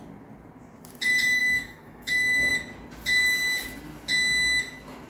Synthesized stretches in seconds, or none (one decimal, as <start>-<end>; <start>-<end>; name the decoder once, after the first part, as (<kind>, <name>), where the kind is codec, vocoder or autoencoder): 1.4-2.5 (autoencoder, DAC-VAE)